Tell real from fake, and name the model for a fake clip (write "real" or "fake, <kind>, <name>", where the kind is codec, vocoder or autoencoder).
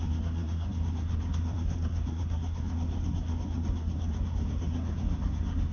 fake, codec, SNAC